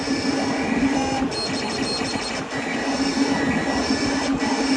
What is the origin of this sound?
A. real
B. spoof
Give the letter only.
A